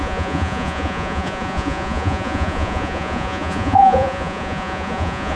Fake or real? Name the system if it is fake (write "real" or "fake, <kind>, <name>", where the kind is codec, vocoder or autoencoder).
fake, vocoder, Vocos